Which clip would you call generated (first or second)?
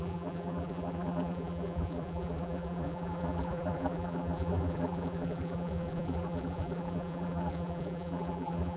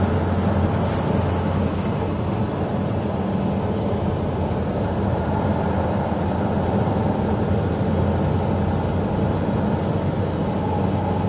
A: first